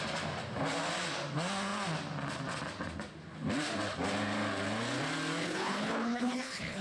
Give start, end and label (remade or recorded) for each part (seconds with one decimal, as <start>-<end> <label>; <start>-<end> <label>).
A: 0.0-5.4 recorded; 5.4-6.8 remade